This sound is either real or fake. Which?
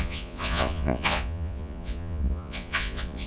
fake